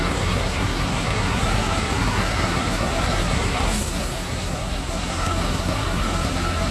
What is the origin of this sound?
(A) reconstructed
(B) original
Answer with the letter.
A